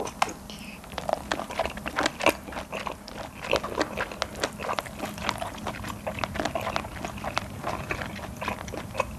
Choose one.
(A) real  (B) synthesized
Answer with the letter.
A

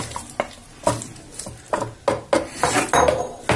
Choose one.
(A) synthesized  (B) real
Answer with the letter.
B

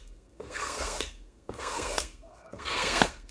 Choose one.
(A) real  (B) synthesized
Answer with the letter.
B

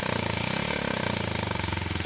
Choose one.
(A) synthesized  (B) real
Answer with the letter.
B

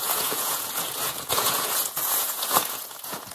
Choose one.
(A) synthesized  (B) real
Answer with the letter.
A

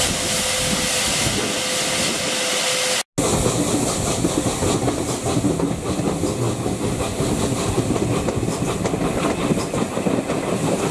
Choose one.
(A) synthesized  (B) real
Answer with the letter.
B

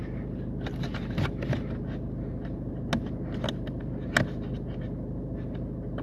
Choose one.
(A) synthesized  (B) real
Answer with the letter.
B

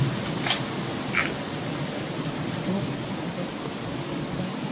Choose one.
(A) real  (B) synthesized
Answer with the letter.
A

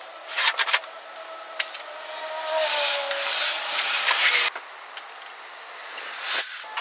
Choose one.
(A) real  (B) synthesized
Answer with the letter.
A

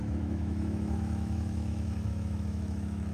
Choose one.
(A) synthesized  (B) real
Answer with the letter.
A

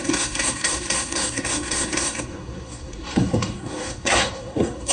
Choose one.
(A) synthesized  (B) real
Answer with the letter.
A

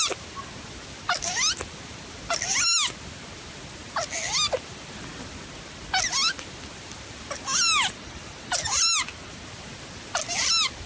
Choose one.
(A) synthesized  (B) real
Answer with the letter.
B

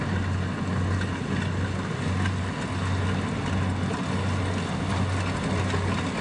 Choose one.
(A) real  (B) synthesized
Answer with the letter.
A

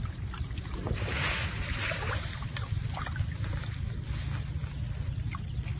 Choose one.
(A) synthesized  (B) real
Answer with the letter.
B